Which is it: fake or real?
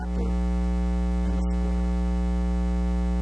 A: real